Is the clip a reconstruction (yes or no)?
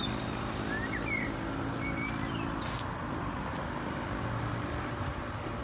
no